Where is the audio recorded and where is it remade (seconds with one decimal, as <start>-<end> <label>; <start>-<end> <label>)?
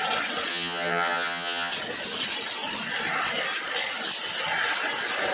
0.0-0.5 recorded; 0.5-1.7 remade; 1.7-5.3 recorded